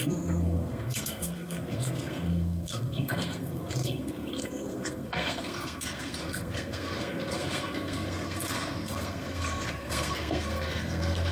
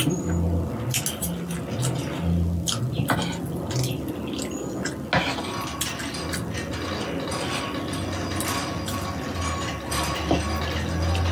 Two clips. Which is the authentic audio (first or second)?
second